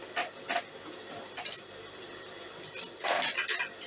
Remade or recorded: recorded